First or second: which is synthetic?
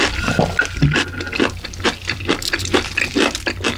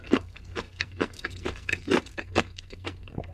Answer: second